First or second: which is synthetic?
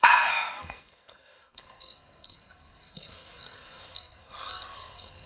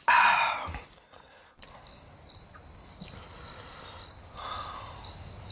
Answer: first